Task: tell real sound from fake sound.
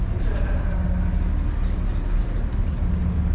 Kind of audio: real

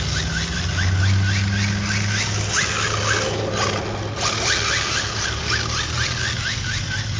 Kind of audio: real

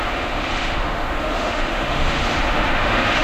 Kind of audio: fake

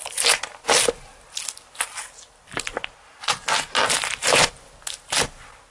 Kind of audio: real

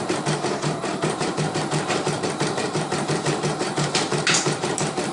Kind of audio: fake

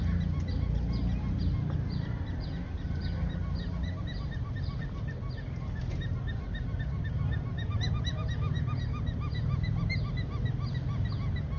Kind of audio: real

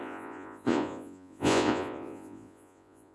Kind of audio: fake